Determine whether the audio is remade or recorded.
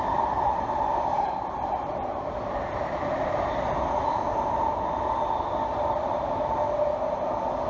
recorded